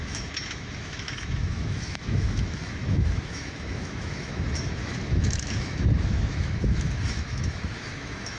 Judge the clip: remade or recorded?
remade